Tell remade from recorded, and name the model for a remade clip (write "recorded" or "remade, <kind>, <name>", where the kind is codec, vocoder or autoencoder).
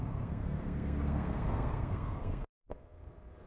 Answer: remade, codec, SNAC